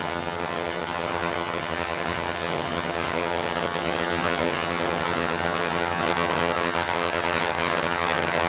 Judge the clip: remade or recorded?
remade